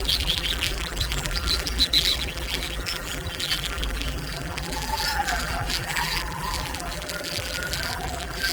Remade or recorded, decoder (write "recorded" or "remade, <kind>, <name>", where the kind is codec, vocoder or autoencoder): remade, vocoder, BigVGAN v2